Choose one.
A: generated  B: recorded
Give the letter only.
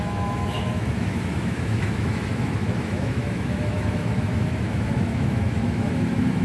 A